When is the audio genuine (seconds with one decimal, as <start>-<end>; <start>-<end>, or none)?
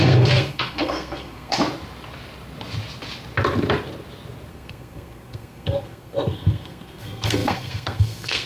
1.6-4.5